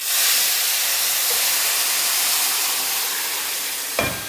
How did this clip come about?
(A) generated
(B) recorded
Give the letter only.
B